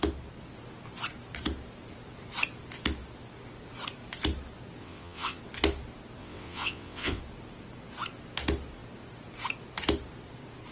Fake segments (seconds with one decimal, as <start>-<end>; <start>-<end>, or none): 4.8-5.4; 6.2-7.2